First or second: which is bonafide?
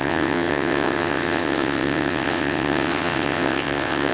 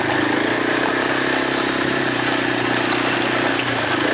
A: second